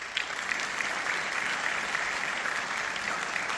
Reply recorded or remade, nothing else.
recorded